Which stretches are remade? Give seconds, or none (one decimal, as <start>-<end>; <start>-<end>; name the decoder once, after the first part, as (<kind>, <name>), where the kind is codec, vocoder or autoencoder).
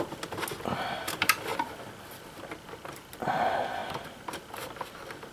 none